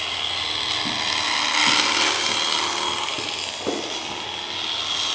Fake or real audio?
real